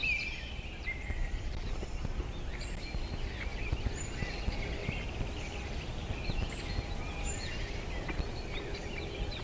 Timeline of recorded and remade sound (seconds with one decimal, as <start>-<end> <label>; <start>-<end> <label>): 0.0-2.0 remade; 2.0-3.5 recorded; 3.5-4.0 remade; 4.0-4.8 recorded; 4.8-6.6 remade; 6.6-9.4 recorded